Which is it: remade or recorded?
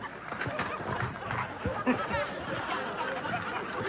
recorded